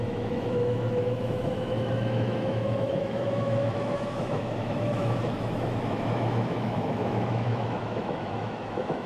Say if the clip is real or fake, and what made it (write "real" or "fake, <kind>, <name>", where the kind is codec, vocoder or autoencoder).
fake, autoencoder, DAC-VAE